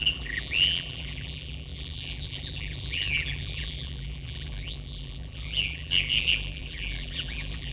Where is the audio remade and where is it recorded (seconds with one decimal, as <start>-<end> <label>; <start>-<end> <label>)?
0.0-7.7 remade